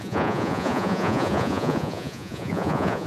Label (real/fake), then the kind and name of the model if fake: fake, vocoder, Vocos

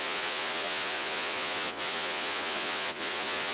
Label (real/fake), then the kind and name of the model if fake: fake, vocoder, Vocos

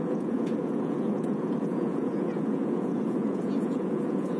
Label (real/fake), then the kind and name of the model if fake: fake, vocoder, Vocos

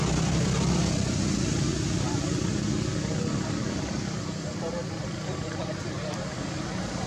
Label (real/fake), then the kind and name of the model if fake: real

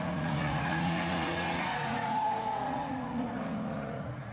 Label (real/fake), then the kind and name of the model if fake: fake, vocoder, Vocos